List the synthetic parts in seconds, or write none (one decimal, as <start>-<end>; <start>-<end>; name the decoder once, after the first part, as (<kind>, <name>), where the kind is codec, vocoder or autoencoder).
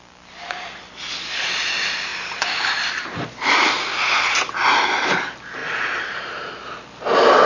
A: 5.6-6.7 (vocoder, BigVGAN v2)